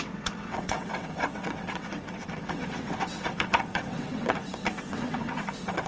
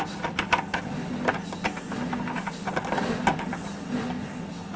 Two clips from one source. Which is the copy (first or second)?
first